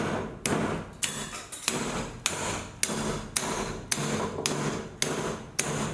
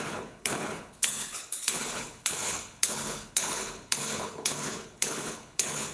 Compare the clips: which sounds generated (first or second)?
second